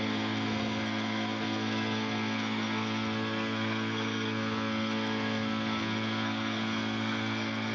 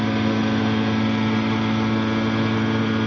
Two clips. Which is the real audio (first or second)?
second